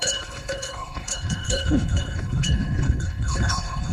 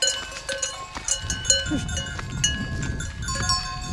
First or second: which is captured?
second